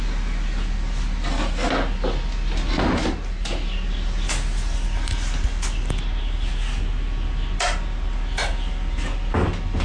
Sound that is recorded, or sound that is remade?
recorded